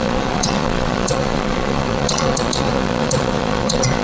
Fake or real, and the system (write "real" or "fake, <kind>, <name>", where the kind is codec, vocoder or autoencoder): fake, vocoder, Vocos